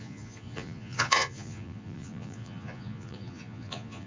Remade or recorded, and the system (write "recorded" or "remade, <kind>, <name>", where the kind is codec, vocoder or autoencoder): remade, vocoder, Vocos